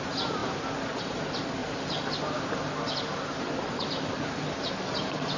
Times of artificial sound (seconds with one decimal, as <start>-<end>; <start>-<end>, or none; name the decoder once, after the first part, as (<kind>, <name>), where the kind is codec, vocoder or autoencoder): none